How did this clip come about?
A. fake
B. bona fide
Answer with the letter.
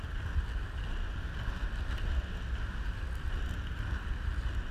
B